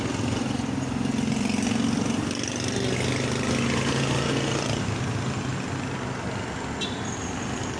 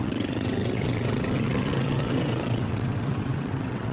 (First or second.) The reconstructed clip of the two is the second